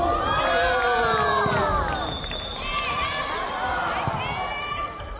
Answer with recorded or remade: recorded